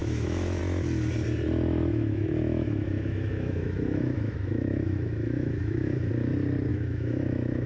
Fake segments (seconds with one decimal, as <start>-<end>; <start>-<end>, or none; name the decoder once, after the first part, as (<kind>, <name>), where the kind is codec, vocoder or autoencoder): 0.0-0.6 (autoencoder, DAC-VAE); 1.9-6.1; 6.7-7.7

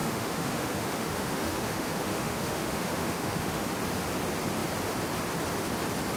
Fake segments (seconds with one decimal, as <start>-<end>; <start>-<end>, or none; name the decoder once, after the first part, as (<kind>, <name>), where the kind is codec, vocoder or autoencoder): 0.0-3.7 (autoencoder, DAC-VAE)

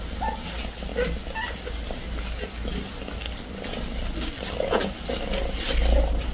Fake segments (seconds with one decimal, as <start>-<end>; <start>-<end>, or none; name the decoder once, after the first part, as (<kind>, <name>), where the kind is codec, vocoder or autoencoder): none